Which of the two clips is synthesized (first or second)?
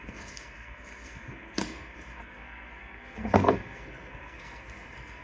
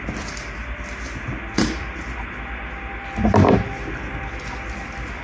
first